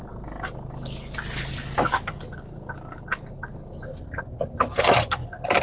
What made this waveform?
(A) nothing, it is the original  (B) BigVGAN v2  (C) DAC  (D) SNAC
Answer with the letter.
A